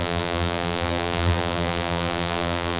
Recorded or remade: remade